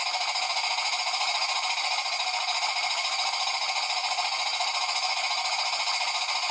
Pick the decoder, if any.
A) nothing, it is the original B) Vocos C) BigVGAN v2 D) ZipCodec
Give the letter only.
A